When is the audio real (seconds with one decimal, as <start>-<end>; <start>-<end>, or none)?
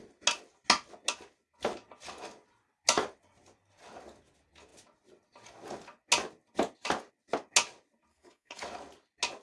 0.0-8.1; 8.6-9.4